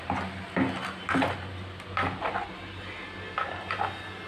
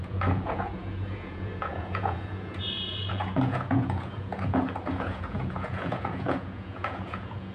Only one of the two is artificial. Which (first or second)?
second